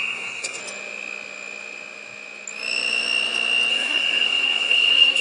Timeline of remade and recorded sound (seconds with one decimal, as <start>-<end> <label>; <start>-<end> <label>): 0.0-0.6 remade; 0.6-3.7 recorded; 3.7-5.2 remade